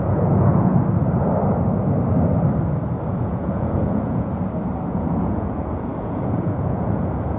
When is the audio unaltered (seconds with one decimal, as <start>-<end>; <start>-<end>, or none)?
0.7-3.1; 4.3-4.9